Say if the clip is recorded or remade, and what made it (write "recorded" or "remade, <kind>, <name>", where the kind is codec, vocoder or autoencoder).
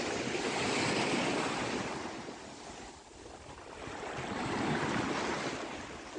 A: recorded